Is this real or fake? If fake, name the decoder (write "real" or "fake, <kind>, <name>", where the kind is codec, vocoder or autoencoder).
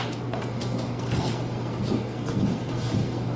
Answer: fake, codec, SNAC